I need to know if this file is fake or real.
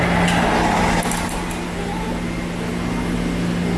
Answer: real